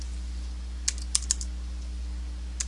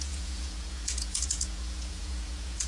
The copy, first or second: second